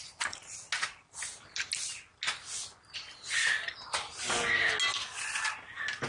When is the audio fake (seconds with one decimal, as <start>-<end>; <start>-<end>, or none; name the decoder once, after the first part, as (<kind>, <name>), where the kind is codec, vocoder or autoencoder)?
none